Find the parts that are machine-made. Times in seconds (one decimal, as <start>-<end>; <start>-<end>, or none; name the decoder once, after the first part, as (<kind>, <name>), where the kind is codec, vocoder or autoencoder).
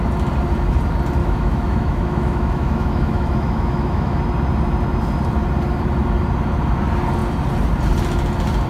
1.2-4.2 (autoencoder, DAC-VAE)